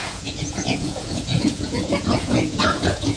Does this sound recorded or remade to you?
remade